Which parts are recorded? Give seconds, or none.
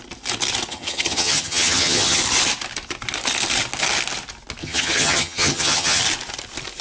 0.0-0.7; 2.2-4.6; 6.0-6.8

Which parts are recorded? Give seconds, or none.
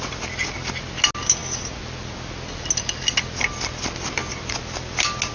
0.0-5.3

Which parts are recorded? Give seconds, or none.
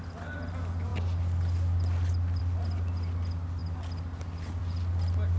0.0-5.4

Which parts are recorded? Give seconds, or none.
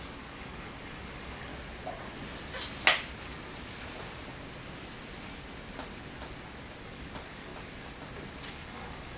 1.5-6.8; 7.5-8.5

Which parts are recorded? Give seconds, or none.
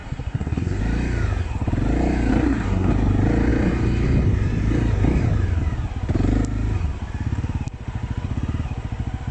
0.8-2.3; 2.9-9.3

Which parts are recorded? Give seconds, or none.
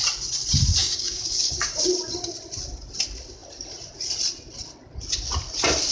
0.0-0.8; 1.7-5.9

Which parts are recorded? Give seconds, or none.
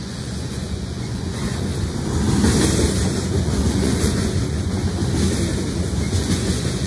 1.7-3.4; 4.8-5.8